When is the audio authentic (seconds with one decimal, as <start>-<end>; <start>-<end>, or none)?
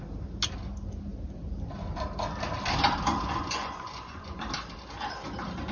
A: 0.0-3.4; 4.4-5.7